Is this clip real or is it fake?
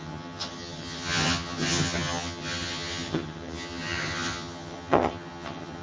fake